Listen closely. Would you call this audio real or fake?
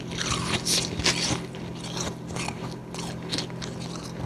real